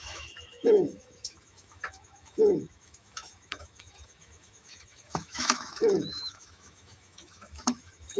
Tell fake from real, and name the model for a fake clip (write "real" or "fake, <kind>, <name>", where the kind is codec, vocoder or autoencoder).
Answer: fake, autoencoder, DAC-VAE